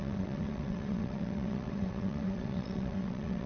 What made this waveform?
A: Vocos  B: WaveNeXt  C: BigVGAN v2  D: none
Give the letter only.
B